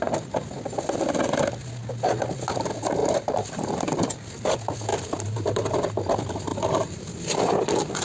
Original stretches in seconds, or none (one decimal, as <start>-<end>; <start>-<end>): 0.0-3.0; 4.0-4.9; 5.9-6.5